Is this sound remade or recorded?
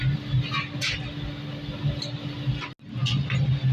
recorded